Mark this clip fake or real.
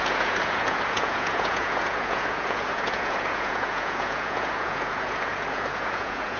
fake